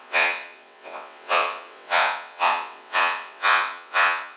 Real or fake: fake